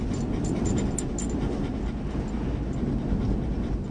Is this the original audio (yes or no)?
yes